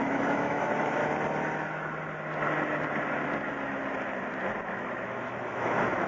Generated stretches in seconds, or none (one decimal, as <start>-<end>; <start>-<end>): 0.0-1.0; 4.7-6.1